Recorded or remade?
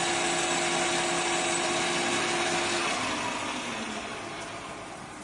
recorded